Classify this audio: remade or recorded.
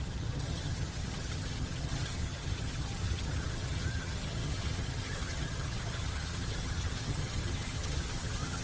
remade